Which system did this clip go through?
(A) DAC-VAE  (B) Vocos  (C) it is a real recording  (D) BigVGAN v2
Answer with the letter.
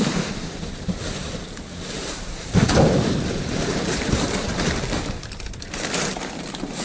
D